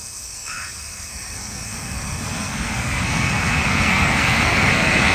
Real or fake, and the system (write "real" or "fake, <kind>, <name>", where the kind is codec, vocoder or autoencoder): fake, codec, SNAC